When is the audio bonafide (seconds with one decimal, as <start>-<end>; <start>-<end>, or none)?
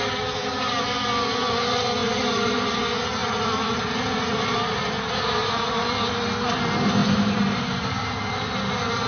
0.0-2.0; 2.8-7.0; 7.6-9.1